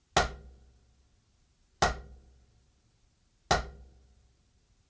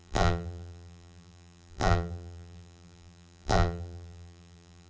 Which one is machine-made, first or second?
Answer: second